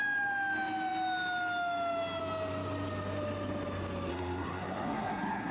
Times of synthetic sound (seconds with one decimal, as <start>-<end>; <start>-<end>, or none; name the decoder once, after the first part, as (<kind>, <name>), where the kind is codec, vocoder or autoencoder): 4.1-5.5 (codec, SNAC)